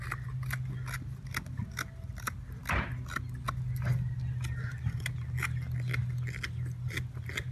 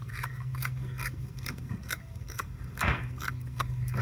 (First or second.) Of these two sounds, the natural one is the first